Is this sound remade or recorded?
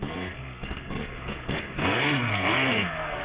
remade